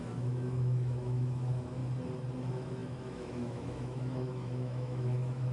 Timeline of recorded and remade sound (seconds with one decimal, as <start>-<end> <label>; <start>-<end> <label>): 0.0-1.8 remade; 1.8-2.4 recorded; 2.4-5.5 remade